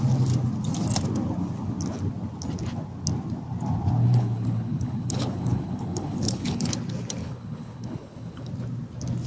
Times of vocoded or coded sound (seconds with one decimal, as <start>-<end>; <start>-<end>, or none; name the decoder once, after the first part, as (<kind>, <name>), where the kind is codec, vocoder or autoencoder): 4.0-6.7 (codec, HILCodec); 7.2-8.5